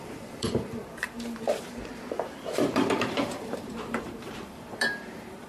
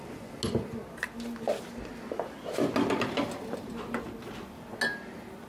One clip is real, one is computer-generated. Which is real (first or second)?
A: second